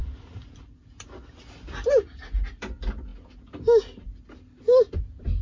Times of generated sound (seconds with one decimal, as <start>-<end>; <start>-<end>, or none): none

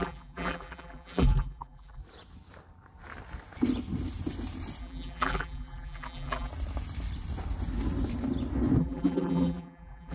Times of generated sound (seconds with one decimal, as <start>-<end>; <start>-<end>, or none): 0.0-2.0; 4.8-6.5; 8.8-10.1

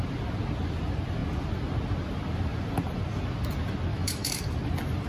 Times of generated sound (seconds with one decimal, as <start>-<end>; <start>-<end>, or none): 3.9-4.4

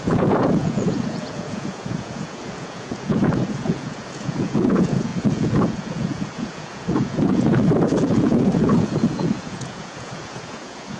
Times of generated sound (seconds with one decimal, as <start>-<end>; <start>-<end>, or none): 0.0-11.0

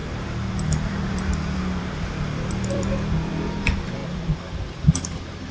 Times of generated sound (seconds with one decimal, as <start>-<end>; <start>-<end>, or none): 0.0-3.3; 4.0-4.8

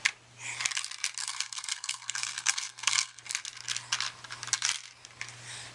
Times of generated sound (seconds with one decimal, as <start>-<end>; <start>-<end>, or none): 1.2-3.2

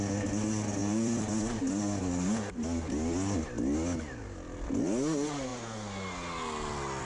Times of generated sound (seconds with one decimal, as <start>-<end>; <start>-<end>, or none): 0.8-1.3

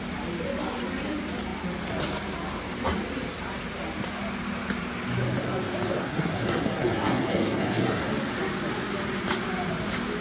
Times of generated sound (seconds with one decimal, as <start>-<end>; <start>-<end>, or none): 6.0-8.1